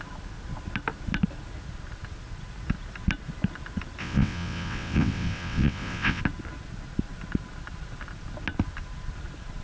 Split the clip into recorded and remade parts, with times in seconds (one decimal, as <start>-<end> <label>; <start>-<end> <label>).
0.0-4.0 recorded; 4.0-6.2 remade; 6.2-9.6 recorded

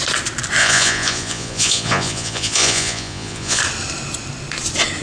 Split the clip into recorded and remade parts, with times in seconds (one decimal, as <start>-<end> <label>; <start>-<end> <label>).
0.0-0.6 recorded; 0.6-3.6 remade; 3.6-5.0 recorded